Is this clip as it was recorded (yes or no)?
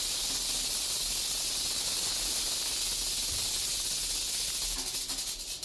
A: yes